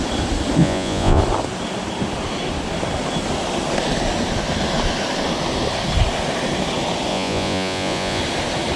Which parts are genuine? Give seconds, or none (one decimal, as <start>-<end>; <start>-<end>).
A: 0.0-0.6; 1.2-7.1; 8.2-8.8